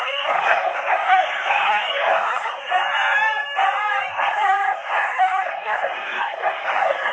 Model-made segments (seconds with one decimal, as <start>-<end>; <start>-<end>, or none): 0.0-2.7; 4.1-7.1